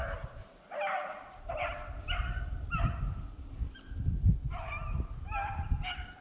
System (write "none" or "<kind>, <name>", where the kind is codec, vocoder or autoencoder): vocoder, BigVGAN v2